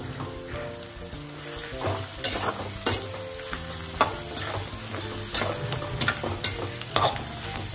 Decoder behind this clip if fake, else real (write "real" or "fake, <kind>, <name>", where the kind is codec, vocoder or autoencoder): real